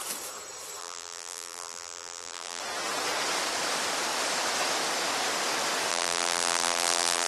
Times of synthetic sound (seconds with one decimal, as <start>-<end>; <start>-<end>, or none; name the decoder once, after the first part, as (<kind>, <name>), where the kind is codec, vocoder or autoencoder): 0.8-2.6 (vocoder, BigVGAN v2); 5.9-7.3